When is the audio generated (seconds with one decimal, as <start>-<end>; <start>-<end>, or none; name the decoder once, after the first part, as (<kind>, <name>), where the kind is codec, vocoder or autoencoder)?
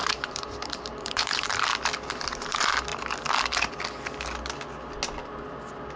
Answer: 0.0-1.7 (vocoder, BigVGAN v2); 2.9-3.7